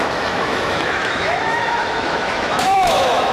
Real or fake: fake